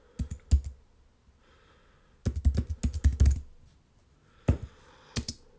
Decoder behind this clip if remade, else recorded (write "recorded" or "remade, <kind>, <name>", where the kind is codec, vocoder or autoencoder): recorded